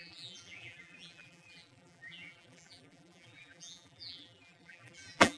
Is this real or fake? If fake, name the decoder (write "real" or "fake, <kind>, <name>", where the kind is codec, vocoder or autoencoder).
fake, vocoder, BigVGAN v2